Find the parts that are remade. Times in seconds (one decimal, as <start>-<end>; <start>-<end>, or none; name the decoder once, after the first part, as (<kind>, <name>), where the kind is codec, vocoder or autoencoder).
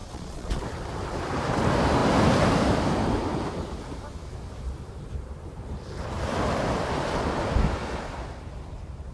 0.0-0.6 (vocoder, Vocos)